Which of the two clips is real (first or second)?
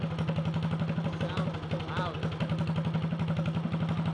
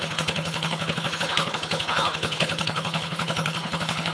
first